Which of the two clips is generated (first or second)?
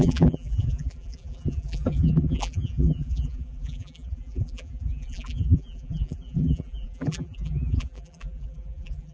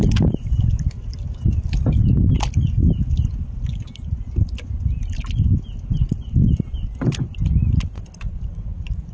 first